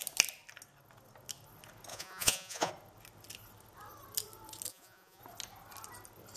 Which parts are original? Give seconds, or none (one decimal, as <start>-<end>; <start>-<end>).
0.0-1.9; 2.7-4.7; 5.2-6.4

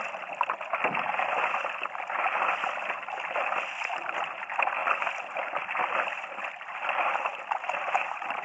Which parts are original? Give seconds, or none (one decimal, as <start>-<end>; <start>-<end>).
0.0-8.4

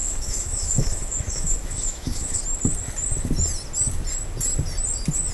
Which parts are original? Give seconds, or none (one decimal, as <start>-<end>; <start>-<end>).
2.4-5.3

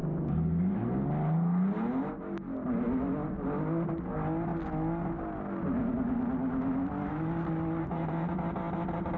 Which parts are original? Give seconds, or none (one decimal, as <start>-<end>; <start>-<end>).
0.0-7.8; 8.3-9.2